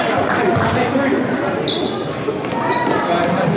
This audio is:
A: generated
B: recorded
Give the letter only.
B